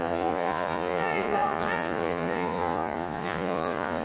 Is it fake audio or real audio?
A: fake